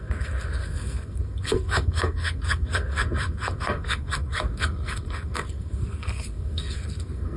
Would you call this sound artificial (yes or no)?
yes